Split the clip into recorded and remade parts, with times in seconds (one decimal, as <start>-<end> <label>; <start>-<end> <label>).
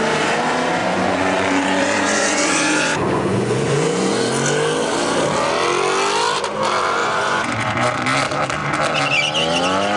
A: 0.0-0.8 recorded; 0.8-4.3 remade; 4.3-7.0 recorded; 7.0-7.7 remade; 7.7-10.0 recorded